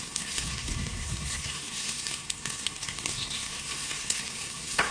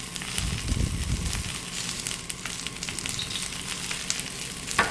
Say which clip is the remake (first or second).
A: first